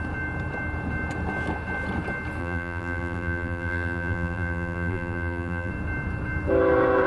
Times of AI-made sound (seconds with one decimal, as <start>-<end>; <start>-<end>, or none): 2.4-5.7